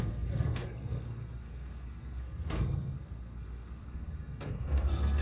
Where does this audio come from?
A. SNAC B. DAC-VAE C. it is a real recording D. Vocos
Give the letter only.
A